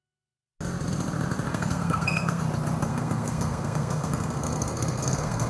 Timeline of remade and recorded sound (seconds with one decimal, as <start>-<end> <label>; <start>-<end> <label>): 0.0-1.5 recorded; 1.5-2.4 remade; 2.4-2.9 recorded; 2.9-5.5 remade